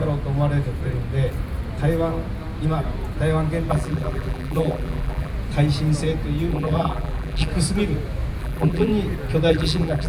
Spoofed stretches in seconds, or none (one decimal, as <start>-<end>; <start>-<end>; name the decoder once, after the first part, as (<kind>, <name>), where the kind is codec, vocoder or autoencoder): 3.7-5.3 (vocoder, BigVGAN v2); 6.5-7.5; 8.4-8.9; 9.5-10.1